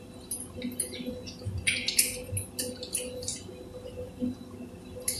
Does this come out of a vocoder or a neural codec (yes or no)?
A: no